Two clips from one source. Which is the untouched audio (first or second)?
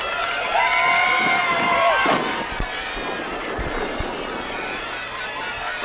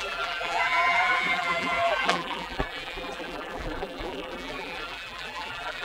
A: first